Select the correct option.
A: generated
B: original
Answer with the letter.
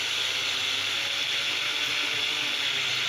B